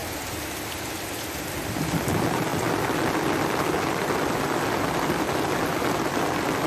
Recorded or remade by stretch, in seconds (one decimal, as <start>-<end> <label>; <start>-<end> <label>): 0.0-6.7 recorded